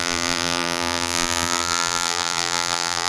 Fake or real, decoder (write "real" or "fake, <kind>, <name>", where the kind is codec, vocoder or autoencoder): fake, vocoder, BigVGAN v2